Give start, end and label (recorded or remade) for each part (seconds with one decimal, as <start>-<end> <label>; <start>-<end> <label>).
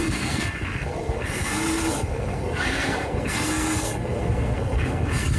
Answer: 0.0-5.4 remade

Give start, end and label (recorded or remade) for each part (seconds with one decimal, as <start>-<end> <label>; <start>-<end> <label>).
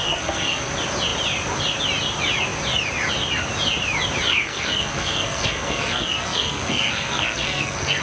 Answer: 0.0-0.7 remade; 0.7-4.3 recorded; 4.3-8.0 remade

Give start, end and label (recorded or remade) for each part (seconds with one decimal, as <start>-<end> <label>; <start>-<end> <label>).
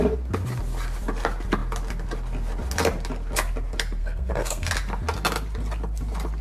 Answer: 0.0-4.0 recorded; 4.0-4.7 remade; 4.7-6.4 recorded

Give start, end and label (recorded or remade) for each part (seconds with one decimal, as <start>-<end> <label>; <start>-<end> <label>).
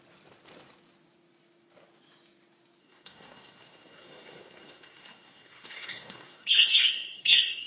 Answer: 0.0-2.8 recorded; 2.8-7.7 remade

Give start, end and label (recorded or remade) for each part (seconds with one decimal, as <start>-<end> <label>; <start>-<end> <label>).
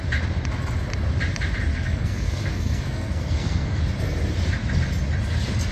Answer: 0.0-1.7 recorded; 1.7-3.8 remade; 3.8-5.7 recorded